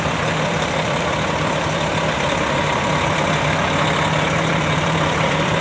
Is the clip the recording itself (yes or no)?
no